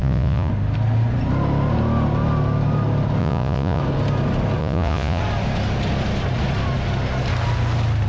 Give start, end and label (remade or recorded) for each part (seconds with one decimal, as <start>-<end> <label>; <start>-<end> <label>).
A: 0.0-0.5 remade; 0.5-3.2 recorded; 3.2-3.8 remade; 3.8-4.6 recorded; 4.6-5.2 remade; 5.2-8.1 recorded